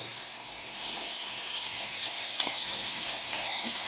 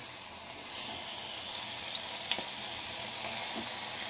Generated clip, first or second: first